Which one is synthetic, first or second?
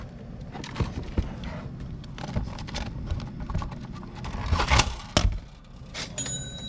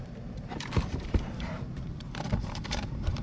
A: second